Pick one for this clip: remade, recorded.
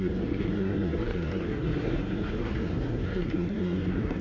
remade